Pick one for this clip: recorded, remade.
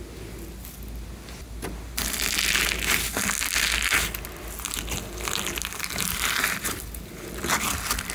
recorded